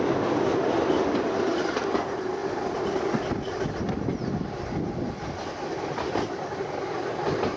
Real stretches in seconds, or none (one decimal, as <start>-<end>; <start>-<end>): 0.0-7.6